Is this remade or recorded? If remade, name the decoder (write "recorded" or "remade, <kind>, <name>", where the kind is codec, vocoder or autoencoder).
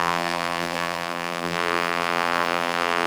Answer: remade, vocoder, BigVGAN v2